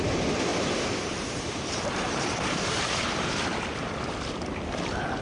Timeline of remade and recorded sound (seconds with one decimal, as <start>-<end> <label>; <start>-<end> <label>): 0.0-0.5 recorded; 0.5-3.4 remade; 3.4-5.2 recorded